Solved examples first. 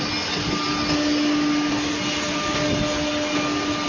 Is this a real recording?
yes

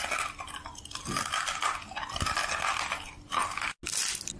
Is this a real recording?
yes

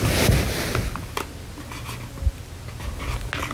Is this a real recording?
yes